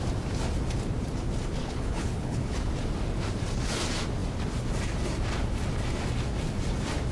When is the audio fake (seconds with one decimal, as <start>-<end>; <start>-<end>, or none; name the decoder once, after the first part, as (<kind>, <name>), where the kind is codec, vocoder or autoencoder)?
1.6-2.7 (codec, HILCodec)